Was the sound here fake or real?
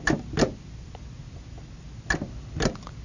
real